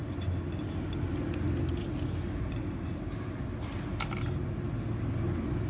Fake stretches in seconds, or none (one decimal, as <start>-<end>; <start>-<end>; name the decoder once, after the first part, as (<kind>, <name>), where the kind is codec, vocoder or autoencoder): none